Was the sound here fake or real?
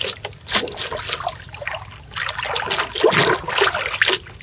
real